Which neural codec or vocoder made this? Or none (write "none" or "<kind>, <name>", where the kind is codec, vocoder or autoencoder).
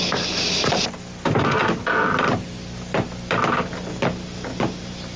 none